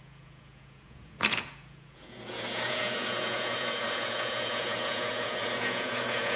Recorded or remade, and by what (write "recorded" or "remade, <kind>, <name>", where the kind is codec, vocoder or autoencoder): remade, vocoder, Vocos